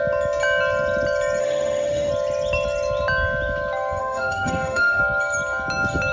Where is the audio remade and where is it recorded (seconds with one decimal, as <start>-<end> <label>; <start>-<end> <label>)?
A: 0.0-1.4 recorded; 1.4-2.1 remade; 2.1-4.0 recorded; 4.0-5.0 remade; 5.0-6.1 recorded